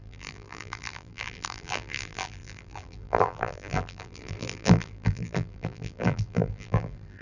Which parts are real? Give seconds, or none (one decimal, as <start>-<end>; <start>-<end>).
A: none